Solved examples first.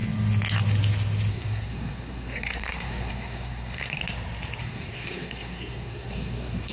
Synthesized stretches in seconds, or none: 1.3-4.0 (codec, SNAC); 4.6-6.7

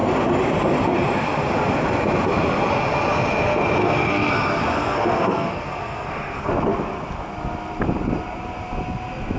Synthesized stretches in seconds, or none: 3.8-4.3 (codec, SNAC); 4.7-6.5

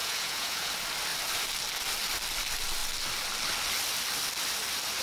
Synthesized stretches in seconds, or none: 0.0-0.7 (vocoder, Vocos)

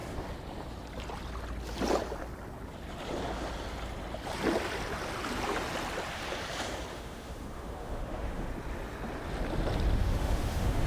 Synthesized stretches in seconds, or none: 6.9-8.5 (autoencoder, DAC-VAE); 10.0-10.9

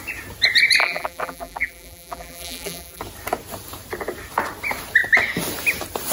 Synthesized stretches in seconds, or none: 0.8-3.0 (vocoder, BigVGAN v2)

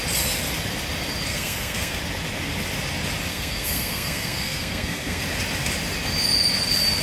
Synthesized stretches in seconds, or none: 1.3-2.0 (codec, SNAC); 3.3-5.2

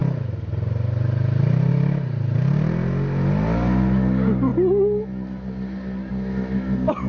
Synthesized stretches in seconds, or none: none